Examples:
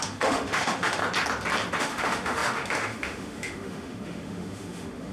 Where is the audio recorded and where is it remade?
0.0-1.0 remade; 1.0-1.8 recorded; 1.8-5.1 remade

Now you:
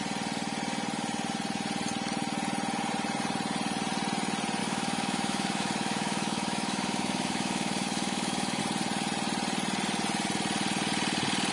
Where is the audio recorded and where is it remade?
0.0-4.6 recorded; 4.6-8.6 remade; 8.6-11.5 recorded

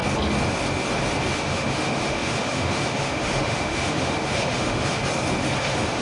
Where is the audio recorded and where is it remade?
0.0-1.3 recorded; 1.3-5.0 remade; 5.0-5.6 recorded; 5.6-6.0 remade

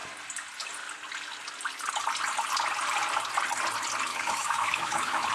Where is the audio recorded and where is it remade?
0.0-4.1 recorded; 4.1-5.3 remade